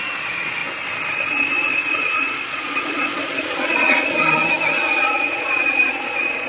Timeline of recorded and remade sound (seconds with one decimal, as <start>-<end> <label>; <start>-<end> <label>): 0.0-0.6 remade; 0.6-1.1 recorded; 1.1-4.4 remade; 4.4-5.0 recorded; 5.0-6.5 remade